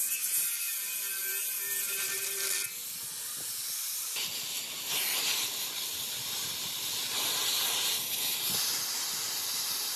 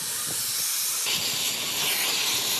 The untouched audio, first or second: second